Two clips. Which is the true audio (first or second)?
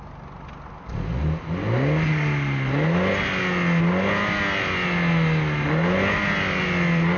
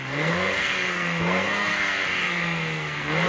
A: first